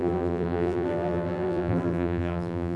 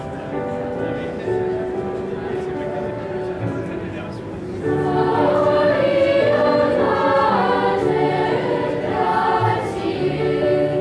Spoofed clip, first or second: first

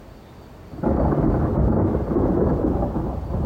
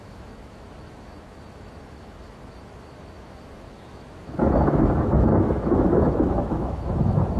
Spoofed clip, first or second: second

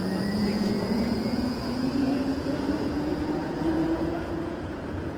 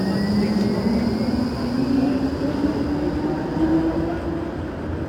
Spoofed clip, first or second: first